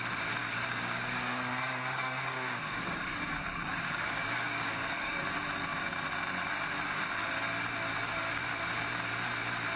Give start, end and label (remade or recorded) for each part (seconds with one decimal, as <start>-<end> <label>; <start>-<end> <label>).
0.0-0.4 recorded; 0.4-5.2 remade; 5.2-9.8 recorded

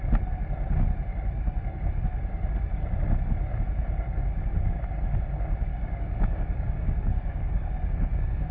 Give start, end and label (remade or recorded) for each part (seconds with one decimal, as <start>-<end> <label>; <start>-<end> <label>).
0.0-5.7 recorded; 5.7-8.5 remade

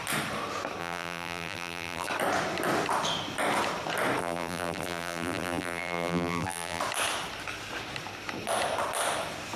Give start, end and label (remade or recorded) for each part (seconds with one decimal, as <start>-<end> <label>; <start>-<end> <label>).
0.0-0.8 recorded; 0.8-2.1 remade; 2.1-4.2 recorded; 4.2-6.8 remade; 6.8-9.6 recorded